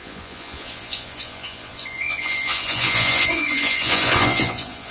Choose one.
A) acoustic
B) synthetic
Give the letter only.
B